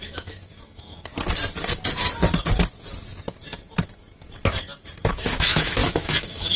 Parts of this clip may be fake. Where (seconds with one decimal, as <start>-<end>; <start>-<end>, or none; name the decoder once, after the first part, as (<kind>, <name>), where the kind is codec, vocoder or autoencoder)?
0.0-1.1 (autoencoder, DAC-VAE); 5.1-6.6